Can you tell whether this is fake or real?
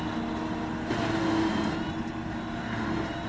real